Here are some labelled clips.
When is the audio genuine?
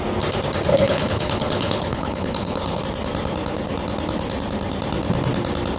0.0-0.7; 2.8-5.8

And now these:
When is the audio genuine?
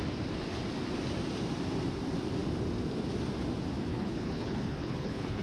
0.0-3.9